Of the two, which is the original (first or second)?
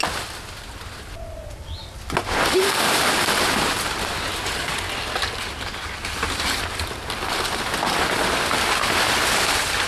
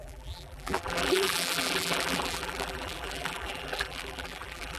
first